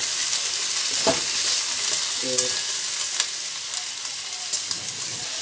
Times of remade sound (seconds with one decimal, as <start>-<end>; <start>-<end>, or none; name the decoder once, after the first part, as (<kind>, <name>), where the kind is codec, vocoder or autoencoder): 0.0-2.0 (vocoder, BigVGAN v2); 4.1-5.4